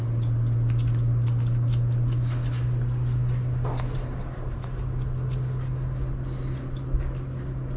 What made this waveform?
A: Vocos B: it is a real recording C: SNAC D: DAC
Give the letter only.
B